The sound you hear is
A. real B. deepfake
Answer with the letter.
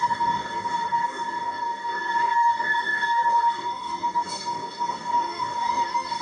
B